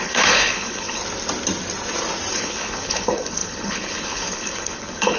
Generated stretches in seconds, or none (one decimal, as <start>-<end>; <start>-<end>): 0.0-1.0; 2.3-5.2

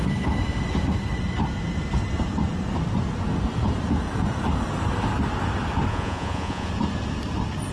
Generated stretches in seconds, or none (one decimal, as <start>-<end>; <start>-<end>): 5.9-6.7

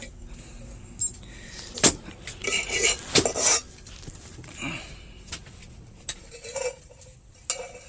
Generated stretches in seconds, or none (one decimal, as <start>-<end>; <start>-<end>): 2.4-3.0; 4.3-5.4

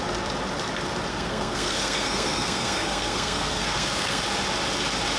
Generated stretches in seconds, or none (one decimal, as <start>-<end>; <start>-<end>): 1.1-4.2